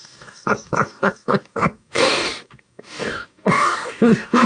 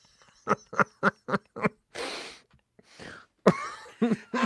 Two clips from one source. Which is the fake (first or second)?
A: first